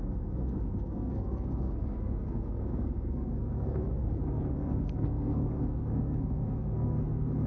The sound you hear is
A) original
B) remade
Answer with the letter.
B